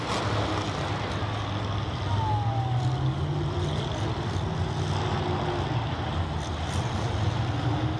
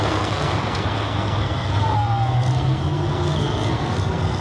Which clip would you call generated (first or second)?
second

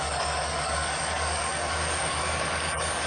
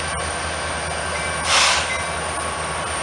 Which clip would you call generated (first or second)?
first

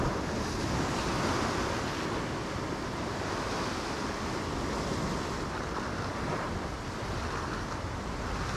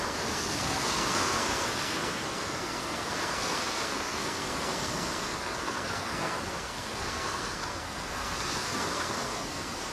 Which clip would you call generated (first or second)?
second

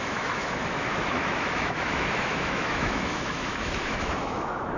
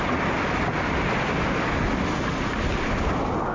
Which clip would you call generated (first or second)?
first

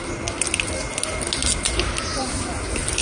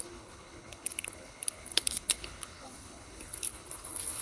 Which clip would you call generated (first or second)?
second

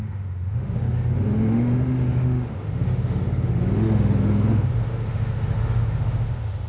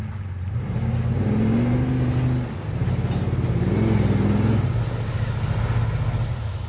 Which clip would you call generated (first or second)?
first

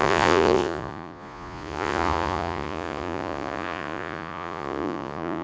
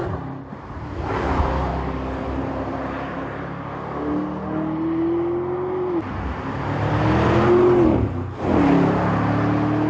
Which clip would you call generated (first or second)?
first